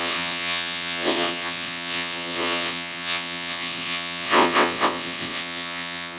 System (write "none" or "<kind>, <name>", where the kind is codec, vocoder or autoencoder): vocoder, WaveNeXt